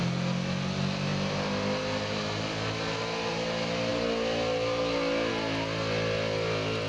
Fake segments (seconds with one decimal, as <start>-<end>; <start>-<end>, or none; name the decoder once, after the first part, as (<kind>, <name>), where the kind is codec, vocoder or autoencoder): none